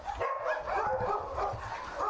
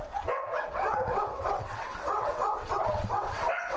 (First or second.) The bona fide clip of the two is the first